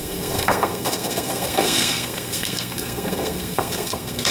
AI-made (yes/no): yes